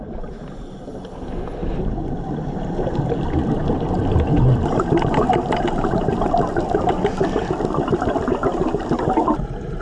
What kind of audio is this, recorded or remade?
recorded